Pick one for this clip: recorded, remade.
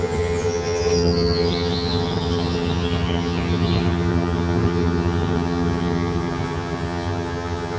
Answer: remade